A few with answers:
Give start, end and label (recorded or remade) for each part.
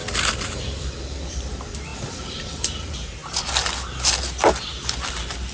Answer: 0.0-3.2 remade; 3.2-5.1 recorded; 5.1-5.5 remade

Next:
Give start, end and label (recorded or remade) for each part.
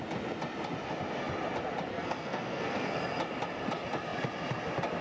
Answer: 0.0-1.9 recorded; 1.9-3.0 remade; 3.0-5.0 recorded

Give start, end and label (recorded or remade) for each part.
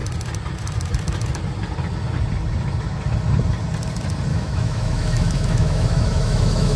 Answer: 0.0-4.3 recorded; 4.3-6.8 remade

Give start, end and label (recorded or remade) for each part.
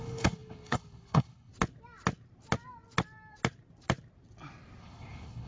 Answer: 0.0-1.5 remade; 1.5-4.8 recorded; 4.8-5.5 remade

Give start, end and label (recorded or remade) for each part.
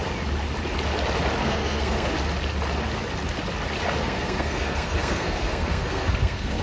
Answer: 0.0-1.4 recorded; 1.4-2.1 remade; 2.1-4.0 recorded; 4.0-6.6 remade